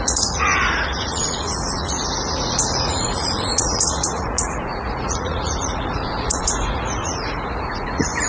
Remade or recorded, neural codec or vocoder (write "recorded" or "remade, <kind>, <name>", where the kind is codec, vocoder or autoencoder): remade, vocoder, Vocos